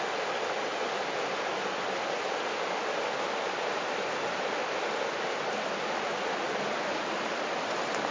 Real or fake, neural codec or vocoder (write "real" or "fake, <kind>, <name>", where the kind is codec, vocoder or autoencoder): real